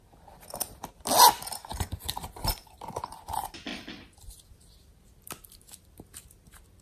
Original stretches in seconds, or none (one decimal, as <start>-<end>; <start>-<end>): 0.0-1.7; 2.5-3.7; 4.5-6.8